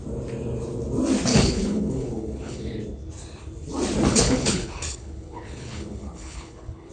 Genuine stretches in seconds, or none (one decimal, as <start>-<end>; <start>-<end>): 0.0-1.3; 2.8-4.1